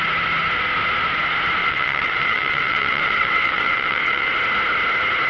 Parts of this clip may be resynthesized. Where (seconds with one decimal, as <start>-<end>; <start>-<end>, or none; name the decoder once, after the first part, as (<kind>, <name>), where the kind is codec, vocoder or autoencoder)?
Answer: 1.6-4.3 (vocoder, WaveNeXt)